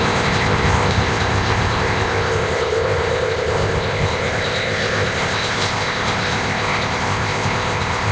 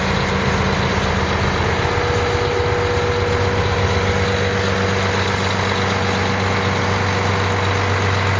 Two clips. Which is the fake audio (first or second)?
first